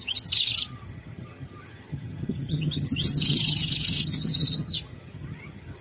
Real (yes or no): no